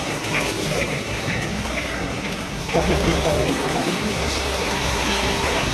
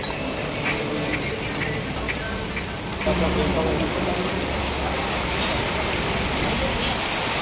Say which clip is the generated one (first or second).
first